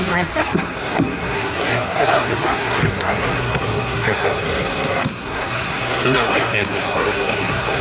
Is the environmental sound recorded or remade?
remade